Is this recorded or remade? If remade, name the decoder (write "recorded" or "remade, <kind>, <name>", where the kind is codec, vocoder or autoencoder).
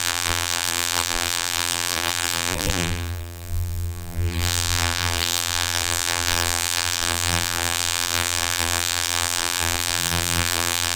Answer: remade, vocoder, BigVGAN v2